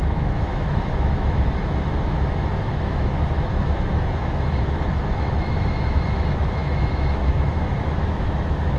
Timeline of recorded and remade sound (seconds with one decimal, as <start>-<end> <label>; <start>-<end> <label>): 0.0-8.8 remade